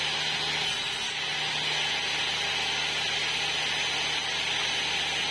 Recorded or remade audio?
recorded